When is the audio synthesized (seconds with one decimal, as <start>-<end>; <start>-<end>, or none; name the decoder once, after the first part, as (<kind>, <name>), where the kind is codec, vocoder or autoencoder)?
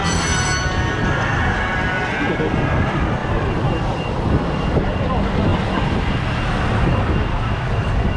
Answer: 3.2-5.1 (vocoder, BigVGAN v2); 5.5-6.4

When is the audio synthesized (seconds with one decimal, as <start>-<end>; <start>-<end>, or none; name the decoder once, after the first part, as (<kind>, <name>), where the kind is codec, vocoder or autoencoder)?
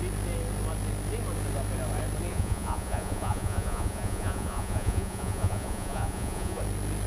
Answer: 2.3-6.6 (vocoder, Vocos)